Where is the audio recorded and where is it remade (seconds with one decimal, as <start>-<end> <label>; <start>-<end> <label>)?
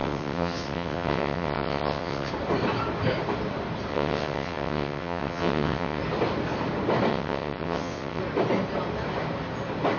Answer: 0.0-2.3 remade; 2.3-3.9 recorded; 3.9-6.0 remade; 6.0-7.1 recorded; 7.1-8.2 remade; 8.2-10.0 recorded